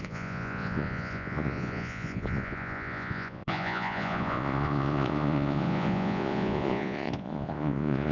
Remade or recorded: remade